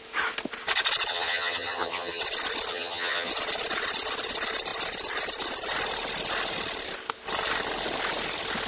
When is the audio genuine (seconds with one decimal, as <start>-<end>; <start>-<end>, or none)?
0.0-1.1; 2.2-2.7; 3.3-8.7